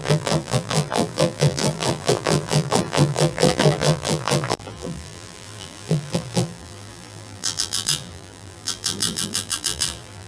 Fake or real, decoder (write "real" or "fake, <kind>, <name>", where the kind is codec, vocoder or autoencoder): fake, vocoder, BigVGAN v2